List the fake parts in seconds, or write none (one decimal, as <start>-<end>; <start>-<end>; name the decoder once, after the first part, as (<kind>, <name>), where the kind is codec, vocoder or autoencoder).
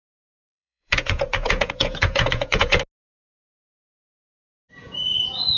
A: 0.4-2.8 (vocoder, Vocos); 4.8-5.6